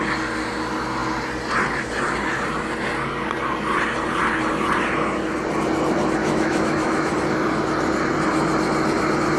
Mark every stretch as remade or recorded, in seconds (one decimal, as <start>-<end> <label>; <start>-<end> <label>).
0.0-6.2 recorded; 6.2-7.1 remade; 7.1-9.4 recorded